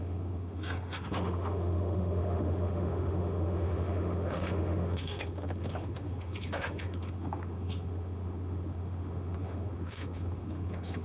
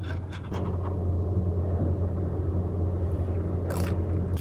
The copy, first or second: first